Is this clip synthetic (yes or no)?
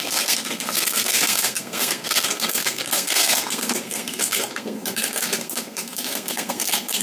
yes